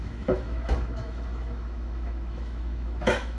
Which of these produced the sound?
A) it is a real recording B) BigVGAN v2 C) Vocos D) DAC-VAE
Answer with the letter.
D